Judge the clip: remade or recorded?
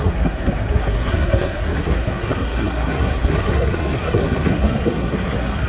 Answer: remade